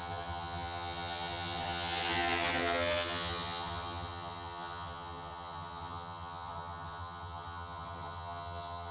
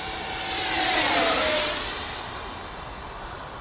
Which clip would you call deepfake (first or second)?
first